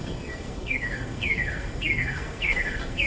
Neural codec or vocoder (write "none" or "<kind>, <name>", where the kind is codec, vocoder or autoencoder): codec, SNAC